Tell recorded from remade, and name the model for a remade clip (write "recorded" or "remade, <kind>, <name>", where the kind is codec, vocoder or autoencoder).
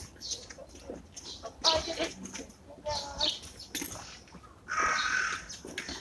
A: recorded